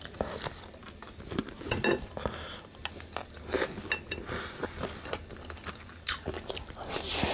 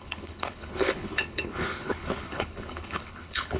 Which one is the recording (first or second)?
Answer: first